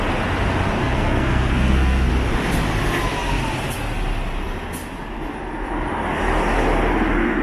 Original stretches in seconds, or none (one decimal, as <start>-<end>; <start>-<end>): 0.0-0.8; 2.1-7.4